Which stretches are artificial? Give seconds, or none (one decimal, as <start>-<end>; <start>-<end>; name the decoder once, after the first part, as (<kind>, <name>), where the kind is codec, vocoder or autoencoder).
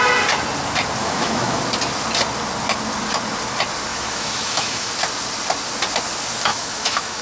1.0-1.6 (autoencoder, DAC-VAE); 3.9-4.9; 6.5-7.2